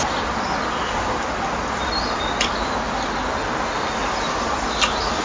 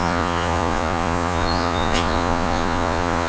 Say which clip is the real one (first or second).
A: first